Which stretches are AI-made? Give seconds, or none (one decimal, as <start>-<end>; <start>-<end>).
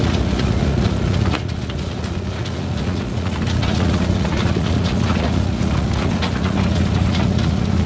0.0-7.9